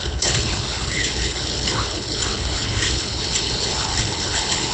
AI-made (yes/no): yes